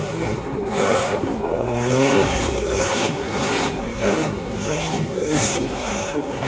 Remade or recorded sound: remade